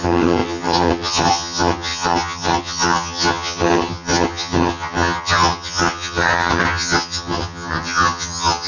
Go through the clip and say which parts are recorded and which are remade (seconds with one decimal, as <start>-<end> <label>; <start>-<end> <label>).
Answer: 0.0-8.7 remade